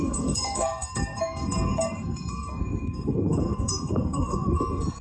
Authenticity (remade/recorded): remade